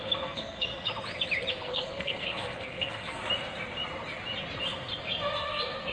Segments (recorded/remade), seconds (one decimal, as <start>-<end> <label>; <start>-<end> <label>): 0.0-0.9 remade; 0.9-1.5 recorded; 1.5-3.2 remade; 3.2-5.0 recorded; 5.0-5.9 remade